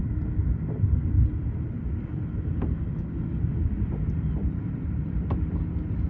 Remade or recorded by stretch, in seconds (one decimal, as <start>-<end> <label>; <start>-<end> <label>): 0.0-4.4 recorded; 4.4-5.6 remade; 5.6-6.1 recorded